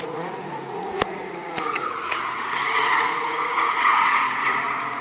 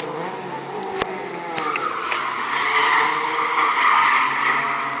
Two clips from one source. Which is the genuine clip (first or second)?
second